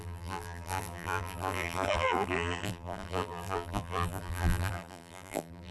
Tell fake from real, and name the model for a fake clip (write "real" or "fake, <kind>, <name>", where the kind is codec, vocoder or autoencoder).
fake, vocoder, BigVGAN v2